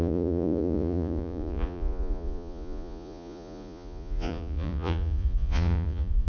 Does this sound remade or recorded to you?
remade